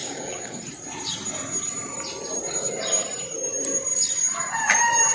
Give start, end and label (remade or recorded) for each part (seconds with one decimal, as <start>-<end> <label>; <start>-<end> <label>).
0.0-0.6 remade; 0.6-5.1 recorded